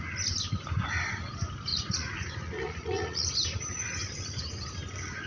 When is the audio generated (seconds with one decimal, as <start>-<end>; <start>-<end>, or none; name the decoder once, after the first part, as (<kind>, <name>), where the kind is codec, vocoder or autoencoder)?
1.7-3.3 (vocoder, Vocos)